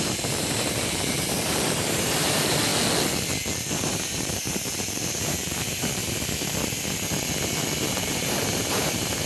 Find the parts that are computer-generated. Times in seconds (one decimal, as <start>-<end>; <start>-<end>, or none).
0.0-2.7; 3.7-6.0; 7.9-9.3